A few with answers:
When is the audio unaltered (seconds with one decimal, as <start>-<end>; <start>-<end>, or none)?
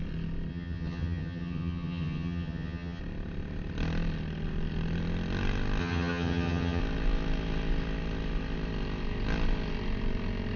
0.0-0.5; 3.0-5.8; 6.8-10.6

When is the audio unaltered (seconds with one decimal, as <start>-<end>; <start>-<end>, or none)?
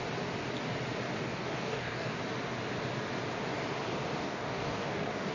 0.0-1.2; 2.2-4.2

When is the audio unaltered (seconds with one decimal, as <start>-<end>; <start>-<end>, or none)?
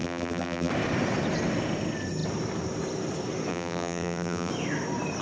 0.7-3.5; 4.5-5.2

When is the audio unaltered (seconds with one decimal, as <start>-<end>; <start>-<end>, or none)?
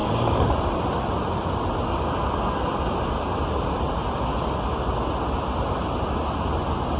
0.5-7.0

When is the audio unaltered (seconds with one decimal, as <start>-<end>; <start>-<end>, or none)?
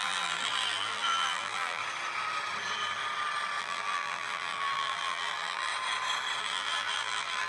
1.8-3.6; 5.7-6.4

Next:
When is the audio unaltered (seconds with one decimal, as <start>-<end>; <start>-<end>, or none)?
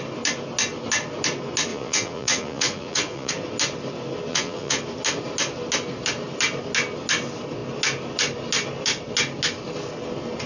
0.0-1.7; 3.3-4.3; 4.8-10.5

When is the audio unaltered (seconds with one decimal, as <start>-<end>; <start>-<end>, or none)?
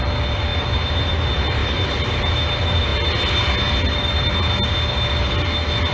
0.0-1.6; 2.3-5.9